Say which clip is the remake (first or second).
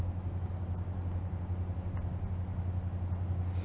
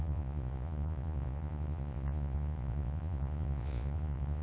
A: second